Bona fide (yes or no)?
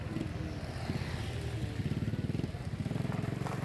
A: yes